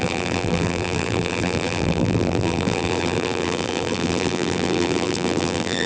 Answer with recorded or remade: remade